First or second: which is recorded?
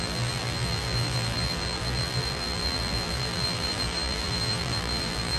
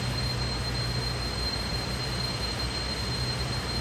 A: second